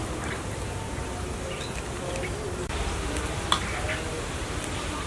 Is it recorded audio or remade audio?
recorded